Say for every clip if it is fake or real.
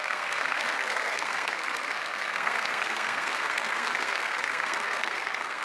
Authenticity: fake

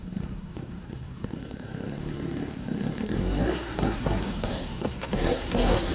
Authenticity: fake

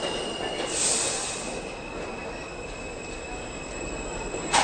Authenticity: real